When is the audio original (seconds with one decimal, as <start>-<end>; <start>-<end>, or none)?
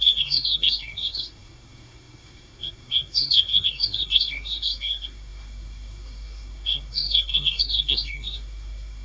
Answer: none